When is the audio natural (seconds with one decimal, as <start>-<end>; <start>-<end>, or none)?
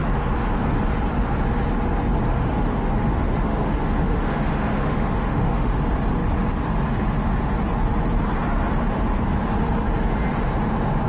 0.0-2.3; 5.8-11.1